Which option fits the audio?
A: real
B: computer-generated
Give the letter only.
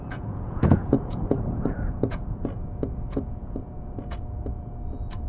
B